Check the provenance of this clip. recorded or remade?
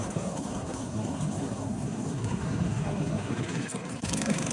remade